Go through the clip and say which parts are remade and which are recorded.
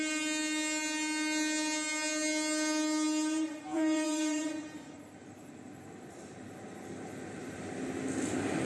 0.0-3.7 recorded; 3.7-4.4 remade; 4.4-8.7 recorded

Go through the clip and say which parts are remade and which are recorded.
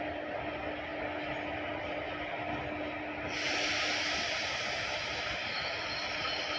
0.0-6.6 recorded